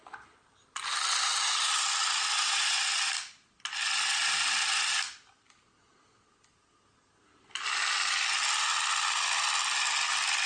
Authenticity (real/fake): real